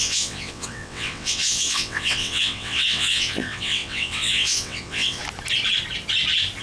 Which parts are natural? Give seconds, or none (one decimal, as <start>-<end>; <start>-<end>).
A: 5.2-6.6